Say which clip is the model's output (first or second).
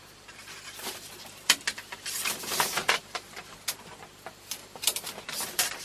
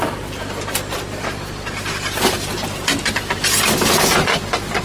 first